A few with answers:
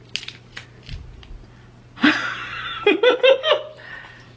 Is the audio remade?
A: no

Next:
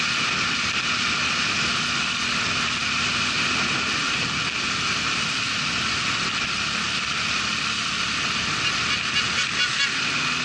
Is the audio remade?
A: no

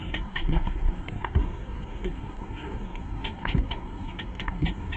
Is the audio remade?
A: yes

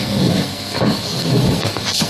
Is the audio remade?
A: yes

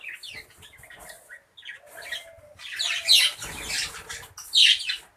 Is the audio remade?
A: no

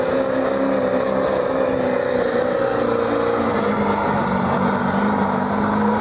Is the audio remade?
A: no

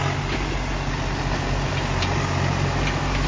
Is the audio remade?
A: no